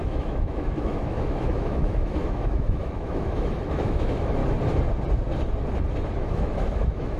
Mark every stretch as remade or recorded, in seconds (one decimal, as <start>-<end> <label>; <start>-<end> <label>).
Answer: 0.0-4.4 remade; 4.4-6.2 recorded; 6.2-7.2 remade